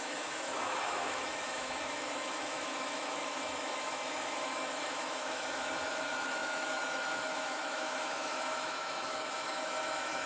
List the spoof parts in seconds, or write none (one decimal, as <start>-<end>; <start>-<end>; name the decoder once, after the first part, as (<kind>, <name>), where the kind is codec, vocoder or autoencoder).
0.0-10.3 (autoencoder, DAC-VAE)